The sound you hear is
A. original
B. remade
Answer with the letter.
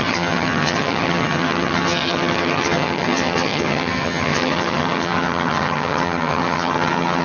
B